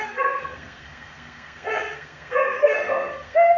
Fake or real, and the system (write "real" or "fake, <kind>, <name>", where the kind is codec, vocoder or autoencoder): fake, codec, SNAC